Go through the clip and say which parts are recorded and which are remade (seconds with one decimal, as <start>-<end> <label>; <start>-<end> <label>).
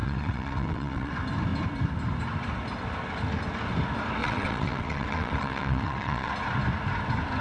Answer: 0.0-1.1 remade; 1.1-4.2 recorded; 4.2-6.3 remade; 6.3-7.4 recorded